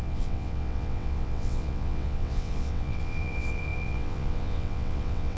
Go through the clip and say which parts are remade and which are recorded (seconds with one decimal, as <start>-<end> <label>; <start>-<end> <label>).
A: 0.0-5.4 remade